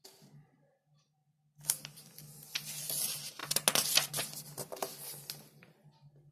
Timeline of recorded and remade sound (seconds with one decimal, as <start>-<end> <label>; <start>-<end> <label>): 0.0-6.3 recorded